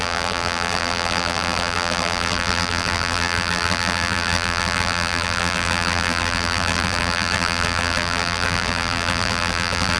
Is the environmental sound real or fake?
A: fake